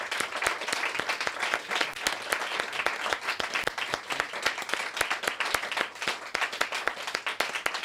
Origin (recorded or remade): recorded